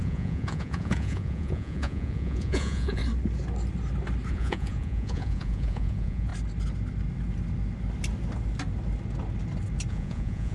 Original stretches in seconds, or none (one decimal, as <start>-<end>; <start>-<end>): 3.0-4.3; 6.3-9.9